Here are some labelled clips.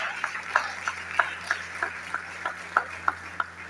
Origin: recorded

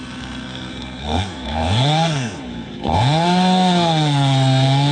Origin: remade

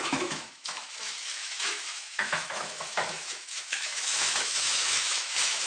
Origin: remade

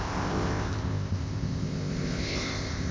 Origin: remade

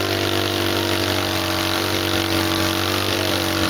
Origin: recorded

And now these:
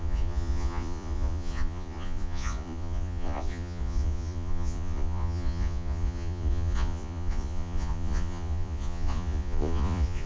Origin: remade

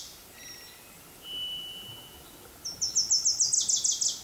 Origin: recorded